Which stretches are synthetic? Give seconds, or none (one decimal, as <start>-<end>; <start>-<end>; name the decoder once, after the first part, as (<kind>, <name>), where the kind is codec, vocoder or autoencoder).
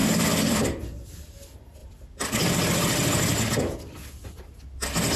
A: 0.0-1.2 (vocoder, BigVGAN v2)